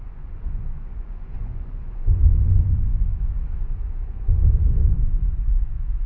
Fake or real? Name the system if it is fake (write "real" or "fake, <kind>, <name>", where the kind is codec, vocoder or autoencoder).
fake, vocoder, Vocos